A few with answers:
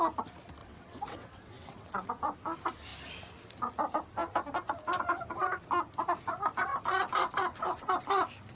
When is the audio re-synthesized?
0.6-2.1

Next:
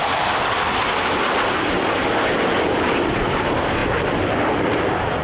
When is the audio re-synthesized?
none